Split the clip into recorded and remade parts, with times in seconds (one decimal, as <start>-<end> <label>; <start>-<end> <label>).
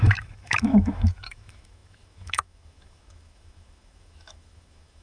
0.0-5.0 remade